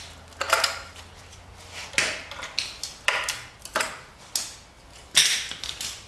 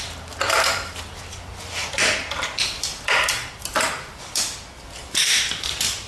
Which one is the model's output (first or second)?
second